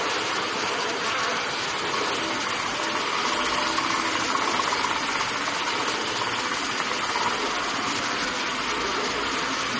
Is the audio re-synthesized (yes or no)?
no